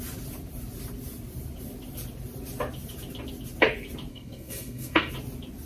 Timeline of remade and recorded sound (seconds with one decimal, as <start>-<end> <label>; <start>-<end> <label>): 0.0-4.1 recorded; 4.1-5.1 remade; 5.1-5.7 recorded